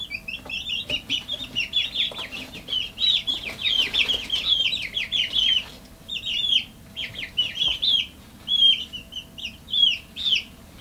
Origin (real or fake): real